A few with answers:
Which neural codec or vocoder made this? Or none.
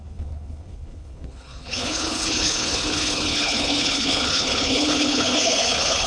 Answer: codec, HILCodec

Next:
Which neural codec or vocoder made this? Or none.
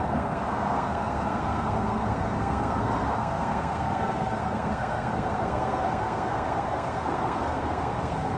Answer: codec, SNAC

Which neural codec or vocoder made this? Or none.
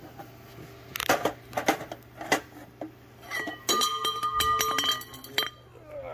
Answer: none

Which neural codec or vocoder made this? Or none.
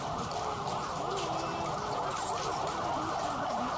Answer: none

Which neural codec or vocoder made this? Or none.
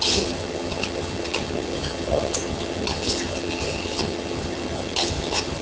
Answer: vocoder, HiFi-GAN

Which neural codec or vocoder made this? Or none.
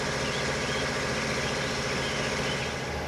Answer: none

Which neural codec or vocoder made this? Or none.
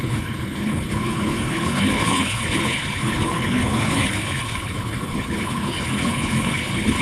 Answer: codec, HILCodec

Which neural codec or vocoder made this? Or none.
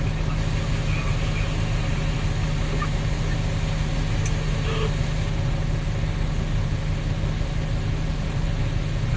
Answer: none